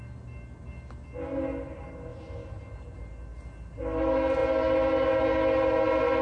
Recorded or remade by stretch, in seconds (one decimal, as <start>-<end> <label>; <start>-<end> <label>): 0.0-6.2 recorded